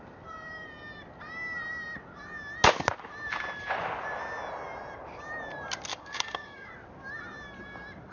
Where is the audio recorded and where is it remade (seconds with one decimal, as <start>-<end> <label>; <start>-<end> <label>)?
0.0-5.9 recorded; 5.9-6.7 remade; 6.7-8.1 recorded

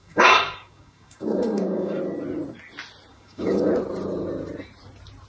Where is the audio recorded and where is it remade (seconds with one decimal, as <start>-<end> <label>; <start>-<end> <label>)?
0.0-2.0 remade; 2.0-3.1 recorded; 3.1-3.7 remade; 3.7-5.3 recorded